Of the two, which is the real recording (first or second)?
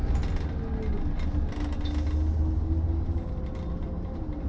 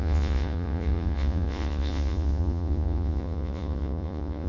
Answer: first